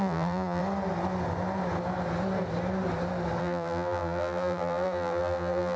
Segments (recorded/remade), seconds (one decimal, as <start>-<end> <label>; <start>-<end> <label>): 0.0-0.6 remade; 0.6-3.4 recorded; 3.4-5.8 remade